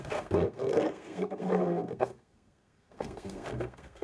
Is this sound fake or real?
fake